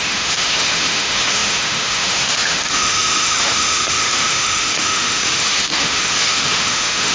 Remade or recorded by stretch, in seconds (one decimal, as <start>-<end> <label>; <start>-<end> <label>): 0.0-7.1 remade

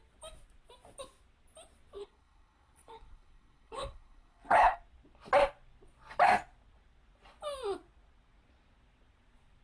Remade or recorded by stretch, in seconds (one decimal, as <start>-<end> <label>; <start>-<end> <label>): 0.0-2.0 recorded; 2.0-4.8 remade; 4.8-9.6 recorded

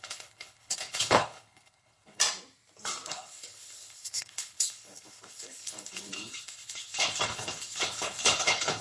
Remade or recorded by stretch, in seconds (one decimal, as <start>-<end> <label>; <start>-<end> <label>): 0.0-2.2 remade; 2.2-3.1 recorded; 3.1-8.8 remade

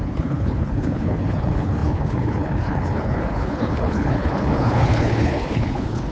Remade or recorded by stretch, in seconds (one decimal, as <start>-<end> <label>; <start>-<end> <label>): 0.0-6.1 remade

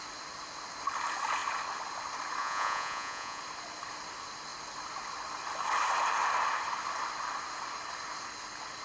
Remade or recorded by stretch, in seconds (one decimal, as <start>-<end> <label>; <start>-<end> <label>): 0.0-2.4 recorded; 2.4-3.4 remade; 3.4-8.8 recorded